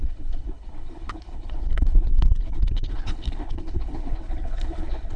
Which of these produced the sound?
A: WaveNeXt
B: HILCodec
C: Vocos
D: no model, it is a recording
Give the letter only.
B